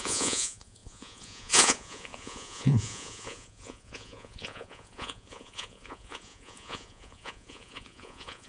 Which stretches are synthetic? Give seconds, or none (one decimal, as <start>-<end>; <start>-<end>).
0.0-8.5